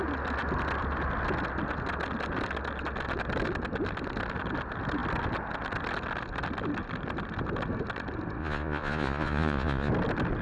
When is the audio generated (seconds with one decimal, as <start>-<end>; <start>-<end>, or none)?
8.4-9.9